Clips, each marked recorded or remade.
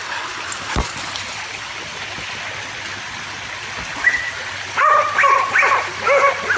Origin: recorded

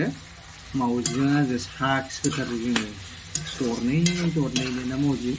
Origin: recorded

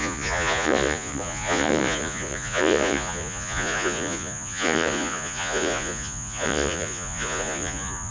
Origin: remade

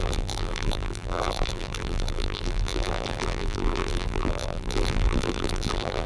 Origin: remade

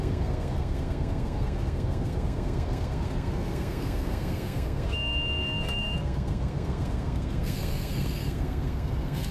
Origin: remade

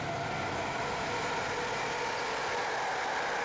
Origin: recorded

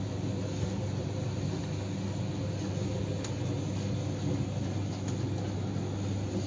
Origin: recorded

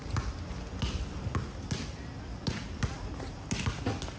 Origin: recorded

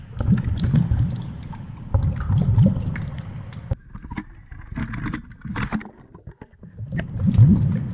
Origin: recorded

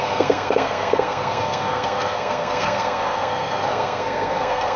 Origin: remade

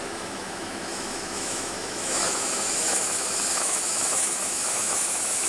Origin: remade